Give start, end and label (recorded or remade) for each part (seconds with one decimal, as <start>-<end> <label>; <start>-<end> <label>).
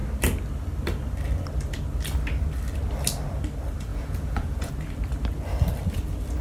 0.0-3.9 recorded; 3.9-4.7 remade; 4.7-6.4 recorded